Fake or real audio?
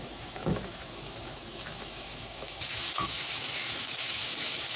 fake